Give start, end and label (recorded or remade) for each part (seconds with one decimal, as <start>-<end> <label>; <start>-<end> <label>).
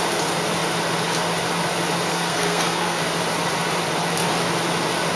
0.0-2.1 recorded; 2.1-3.0 remade; 3.0-5.2 recorded